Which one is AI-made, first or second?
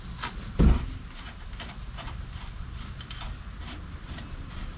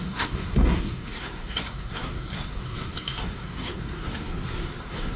second